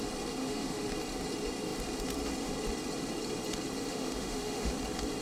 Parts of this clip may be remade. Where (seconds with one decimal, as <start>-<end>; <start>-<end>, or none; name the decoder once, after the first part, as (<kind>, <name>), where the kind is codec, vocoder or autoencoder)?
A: 0.4-0.9 (autoencoder, DAC-VAE); 3.9-4.7